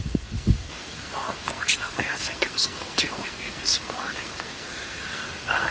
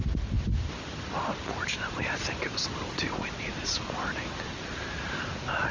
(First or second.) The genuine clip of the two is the second